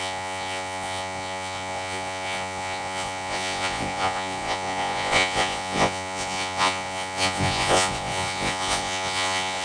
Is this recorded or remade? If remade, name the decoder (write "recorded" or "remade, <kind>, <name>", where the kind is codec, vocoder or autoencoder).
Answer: remade, vocoder, Vocos